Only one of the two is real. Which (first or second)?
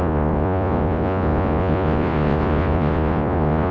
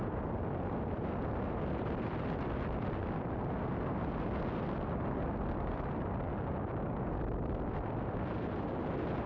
second